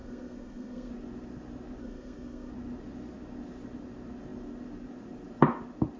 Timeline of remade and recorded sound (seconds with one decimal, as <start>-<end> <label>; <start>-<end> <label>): 0.0-0.9 remade; 0.9-1.8 recorded; 1.8-2.5 remade; 2.5-6.0 recorded